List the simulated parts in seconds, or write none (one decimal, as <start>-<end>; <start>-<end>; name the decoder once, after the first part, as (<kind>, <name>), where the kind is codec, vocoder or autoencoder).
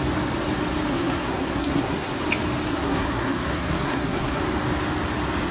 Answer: 0.9-2.2 (codec, SNAC); 2.7-4.4